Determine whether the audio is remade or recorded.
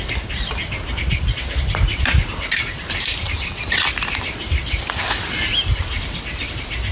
remade